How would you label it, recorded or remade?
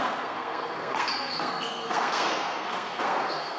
remade